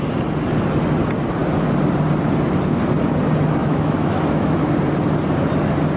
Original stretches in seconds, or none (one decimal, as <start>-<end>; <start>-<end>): 0.0-3.6; 4.7-6.0